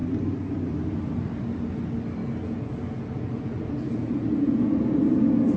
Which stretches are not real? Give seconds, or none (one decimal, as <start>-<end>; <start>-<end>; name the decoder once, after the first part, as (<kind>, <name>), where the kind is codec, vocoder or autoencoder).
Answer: 2.2-5.6 (vocoder, Vocos)

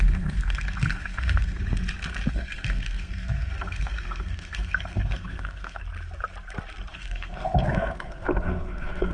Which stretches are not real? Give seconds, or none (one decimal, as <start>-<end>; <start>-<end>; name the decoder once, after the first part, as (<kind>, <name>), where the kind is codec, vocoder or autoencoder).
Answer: 0.0-1.6 (codec, SNAC); 2.3-5.8; 6.9-9.1

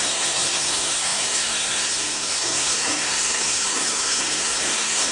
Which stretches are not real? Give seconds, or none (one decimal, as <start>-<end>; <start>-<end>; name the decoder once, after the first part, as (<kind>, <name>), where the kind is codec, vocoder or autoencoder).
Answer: 0.0-5.1 (codec, SNAC)

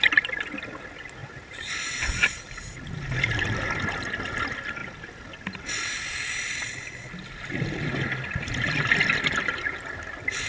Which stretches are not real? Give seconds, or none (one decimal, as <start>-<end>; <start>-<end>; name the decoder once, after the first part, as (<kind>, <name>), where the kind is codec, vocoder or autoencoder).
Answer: 1.2-3.2 (vocoder, BigVGAN v2)

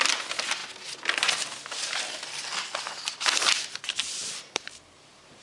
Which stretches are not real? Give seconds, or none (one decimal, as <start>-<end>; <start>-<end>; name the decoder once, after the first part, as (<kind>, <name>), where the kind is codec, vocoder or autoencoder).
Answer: 4.2-5.4 (vocoder, BigVGAN v2)